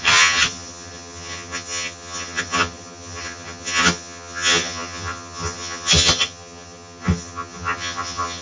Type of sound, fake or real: fake